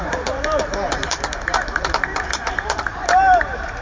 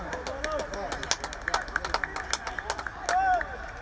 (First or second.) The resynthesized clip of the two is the first